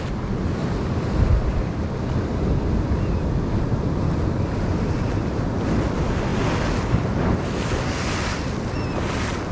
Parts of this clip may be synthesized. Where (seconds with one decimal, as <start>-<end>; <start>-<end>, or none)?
none